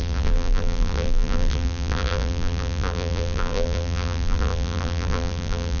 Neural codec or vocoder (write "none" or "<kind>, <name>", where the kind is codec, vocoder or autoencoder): vocoder, BigVGAN v2